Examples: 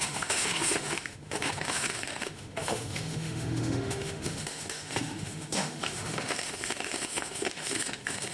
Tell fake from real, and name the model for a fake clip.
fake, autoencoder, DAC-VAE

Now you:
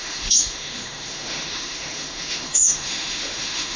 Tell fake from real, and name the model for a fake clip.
fake, autoencoder, DAC-VAE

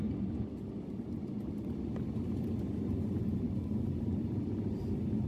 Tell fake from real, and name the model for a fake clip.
real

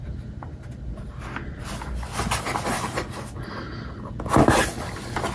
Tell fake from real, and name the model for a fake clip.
real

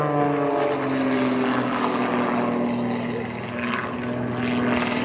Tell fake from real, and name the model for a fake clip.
real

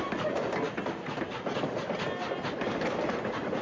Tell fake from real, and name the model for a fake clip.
real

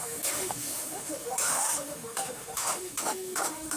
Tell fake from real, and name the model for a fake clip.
fake, autoencoder, DAC-VAE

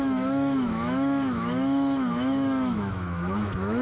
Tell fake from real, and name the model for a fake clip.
fake, autoencoder, DAC-VAE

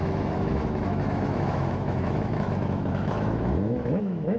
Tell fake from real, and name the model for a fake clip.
fake, autoencoder, DAC-VAE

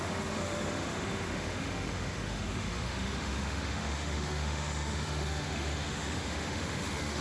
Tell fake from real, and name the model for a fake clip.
fake, autoencoder, DAC-VAE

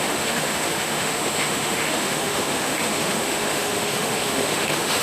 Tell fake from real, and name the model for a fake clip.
fake, autoencoder, DAC-VAE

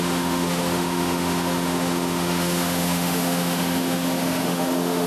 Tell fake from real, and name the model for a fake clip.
fake, autoencoder, DAC-VAE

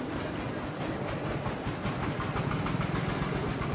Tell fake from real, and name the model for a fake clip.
real